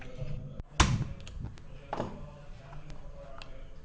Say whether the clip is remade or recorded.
recorded